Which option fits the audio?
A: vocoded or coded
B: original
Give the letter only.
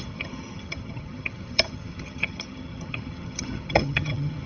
A